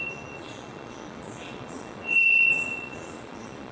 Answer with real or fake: fake